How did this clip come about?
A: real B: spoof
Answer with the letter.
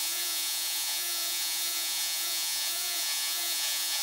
B